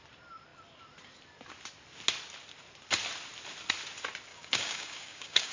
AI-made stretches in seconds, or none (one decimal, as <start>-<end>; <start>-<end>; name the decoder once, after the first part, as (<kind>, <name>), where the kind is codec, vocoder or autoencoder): 4.3-5.5 (codec, DAC)